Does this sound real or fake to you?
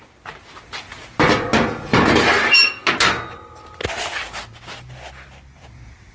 real